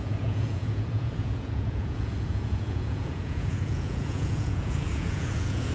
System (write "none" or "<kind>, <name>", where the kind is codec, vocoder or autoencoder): vocoder, Vocos